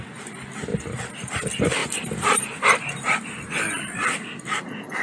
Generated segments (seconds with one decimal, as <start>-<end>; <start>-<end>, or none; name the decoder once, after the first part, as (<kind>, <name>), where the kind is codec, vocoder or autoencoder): 1.8-2.8 (vocoder, BigVGAN v2); 4.0-4.6